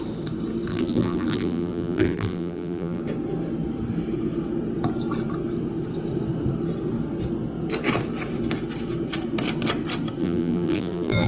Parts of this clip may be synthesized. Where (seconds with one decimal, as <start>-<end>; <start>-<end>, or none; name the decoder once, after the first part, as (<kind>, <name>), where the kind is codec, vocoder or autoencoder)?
0.7-3.0 (vocoder, BigVGAN v2); 10.2-11.3